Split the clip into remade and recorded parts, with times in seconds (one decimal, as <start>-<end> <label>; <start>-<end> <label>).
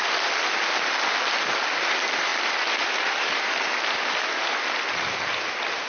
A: 0.0-5.9 recorded